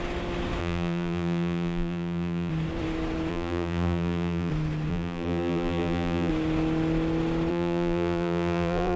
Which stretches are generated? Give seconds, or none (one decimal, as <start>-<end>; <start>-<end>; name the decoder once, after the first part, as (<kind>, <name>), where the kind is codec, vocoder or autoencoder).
0.6-2.5 (vocoder, BigVGAN v2); 3.3-4.5; 4.9-6.3; 7.5-9.0